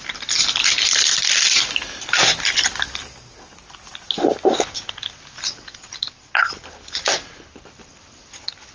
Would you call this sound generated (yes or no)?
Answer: no